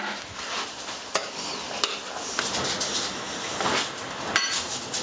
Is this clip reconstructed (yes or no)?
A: no